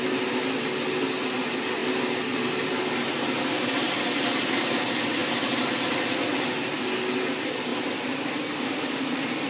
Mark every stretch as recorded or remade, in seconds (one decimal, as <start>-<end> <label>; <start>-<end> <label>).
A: 0.0-9.5 recorded